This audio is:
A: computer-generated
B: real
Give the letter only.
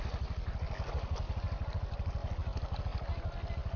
B